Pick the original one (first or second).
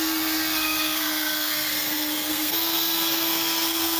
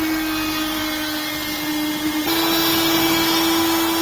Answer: second